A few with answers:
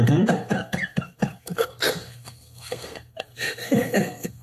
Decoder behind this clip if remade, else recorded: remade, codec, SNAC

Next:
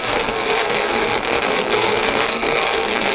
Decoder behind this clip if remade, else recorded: remade, codec, SNAC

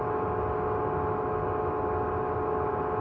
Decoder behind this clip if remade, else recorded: recorded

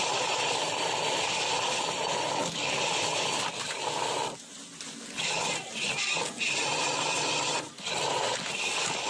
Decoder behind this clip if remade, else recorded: recorded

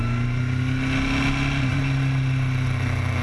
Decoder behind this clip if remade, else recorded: recorded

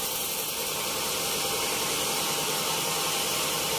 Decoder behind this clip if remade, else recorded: recorded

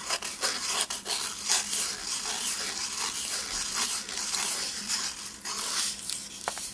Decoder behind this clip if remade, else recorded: recorded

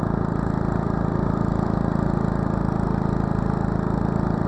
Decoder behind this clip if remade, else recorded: recorded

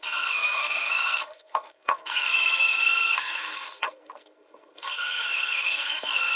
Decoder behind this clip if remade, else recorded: remade, codec, SNAC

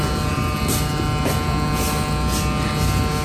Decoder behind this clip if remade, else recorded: recorded